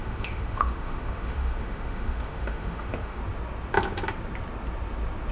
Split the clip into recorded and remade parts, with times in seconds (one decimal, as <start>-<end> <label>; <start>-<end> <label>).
0.0-3.2 remade; 3.2-5.3 recorded